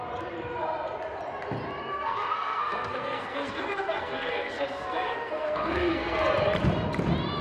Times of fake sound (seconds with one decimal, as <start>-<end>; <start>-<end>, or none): 1.8-6.2